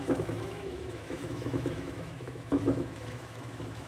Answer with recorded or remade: remade